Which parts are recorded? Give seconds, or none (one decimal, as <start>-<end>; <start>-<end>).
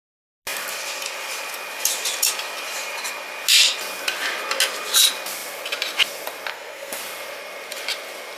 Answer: 0.0-6.5; 7.0-8.4